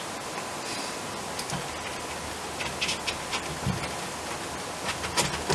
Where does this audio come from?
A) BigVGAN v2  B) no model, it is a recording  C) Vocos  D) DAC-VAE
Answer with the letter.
B